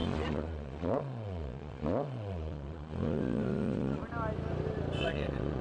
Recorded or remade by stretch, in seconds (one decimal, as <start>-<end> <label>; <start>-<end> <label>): 0.0-4.0 remade; 4.0-5.0 recorded; 5.0-5.6 remade